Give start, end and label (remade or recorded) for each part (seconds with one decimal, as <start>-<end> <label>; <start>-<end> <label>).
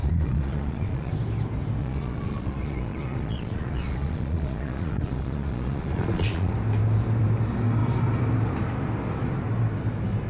0.0-1.1 remade; 1.1-1.8 recorded; 1.8-6.5 remade; 6.5-10.3 recorded